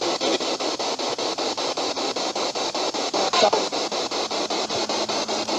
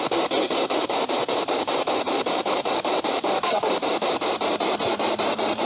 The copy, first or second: second